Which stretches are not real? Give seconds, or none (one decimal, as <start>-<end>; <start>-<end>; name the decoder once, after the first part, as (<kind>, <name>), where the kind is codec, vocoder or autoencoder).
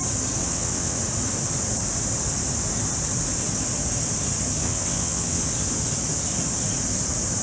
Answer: 0.4-1.0 (vocoder, WaveNeXt); 4.6-5.4